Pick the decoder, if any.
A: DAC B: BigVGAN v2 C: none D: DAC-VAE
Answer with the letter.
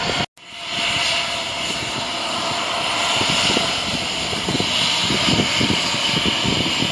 C